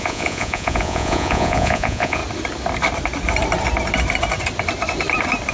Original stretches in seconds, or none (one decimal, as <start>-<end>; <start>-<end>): 2.2-5.5